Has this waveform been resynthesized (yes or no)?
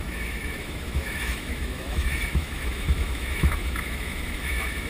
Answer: yes